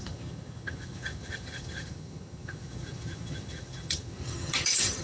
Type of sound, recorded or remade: remade